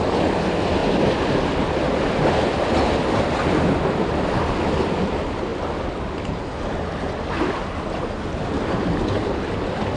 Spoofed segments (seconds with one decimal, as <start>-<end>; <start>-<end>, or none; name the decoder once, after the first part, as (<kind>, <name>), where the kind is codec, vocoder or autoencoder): none